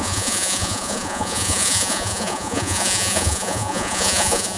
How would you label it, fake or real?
fake